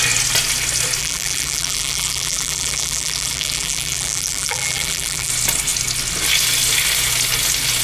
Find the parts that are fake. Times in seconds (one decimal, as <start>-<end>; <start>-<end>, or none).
1.0-5.3